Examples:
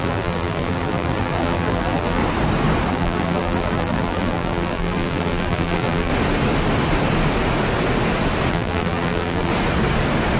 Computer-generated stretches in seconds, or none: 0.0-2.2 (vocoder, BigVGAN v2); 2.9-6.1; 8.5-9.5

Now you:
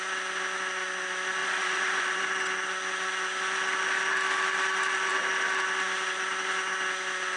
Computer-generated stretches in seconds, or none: 1.4-2.2 (vocoder, Vocos)

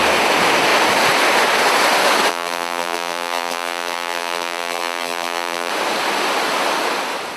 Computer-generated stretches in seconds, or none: 2.3-5.7 (vocoder, BigVGAN v2)

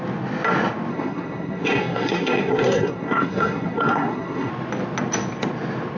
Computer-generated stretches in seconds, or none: 0.9-4.5 (codec, SNAC)

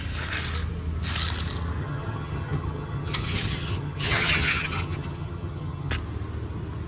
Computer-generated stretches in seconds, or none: 1.8-5.9 (vocoder, HiFi-GAN)